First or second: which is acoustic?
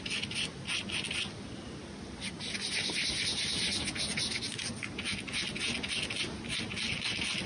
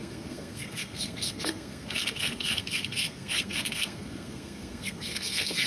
first